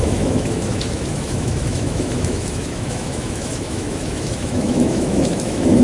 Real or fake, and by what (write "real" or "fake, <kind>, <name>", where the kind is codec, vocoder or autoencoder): fake, autoencoder, DAC-VAE